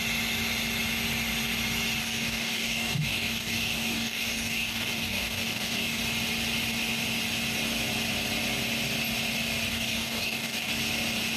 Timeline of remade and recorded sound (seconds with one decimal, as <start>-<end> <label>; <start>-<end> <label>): 0.0-2.0 recorded; 2.0-6.0 remade; 6.0-9.7 recorded; 9.7-10.7 remade; 10.7-11.4 recorded